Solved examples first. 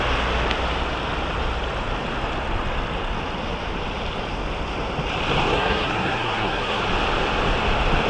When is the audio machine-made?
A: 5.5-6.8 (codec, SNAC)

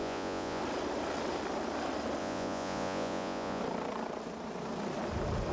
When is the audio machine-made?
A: 0.0-0.6 (vocoder, Vocos); 2.2-3.6